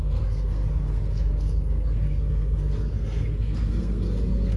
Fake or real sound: fake